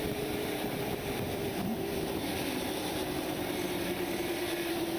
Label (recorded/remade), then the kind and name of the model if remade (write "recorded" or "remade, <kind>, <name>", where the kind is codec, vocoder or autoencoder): remade, vocoder, BigVGAN v2